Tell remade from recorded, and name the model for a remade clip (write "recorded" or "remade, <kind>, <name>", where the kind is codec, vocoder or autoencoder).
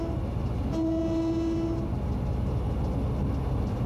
recorded